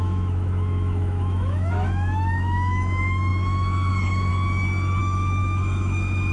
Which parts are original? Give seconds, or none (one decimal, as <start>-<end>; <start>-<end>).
4.3-5.0

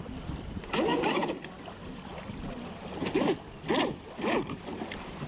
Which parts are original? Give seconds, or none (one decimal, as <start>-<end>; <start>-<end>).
none

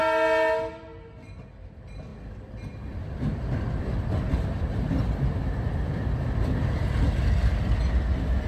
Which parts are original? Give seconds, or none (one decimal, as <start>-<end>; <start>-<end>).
0.0-2.1; 7.2-8.5

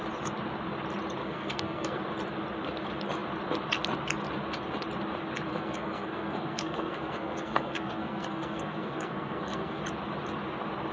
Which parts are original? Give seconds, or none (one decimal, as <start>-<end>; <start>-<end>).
0.0-1.2; 2.0-5.5; 9.8-10.9

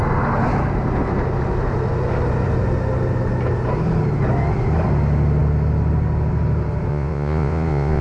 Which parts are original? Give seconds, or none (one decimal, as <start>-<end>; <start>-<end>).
0.0-6.9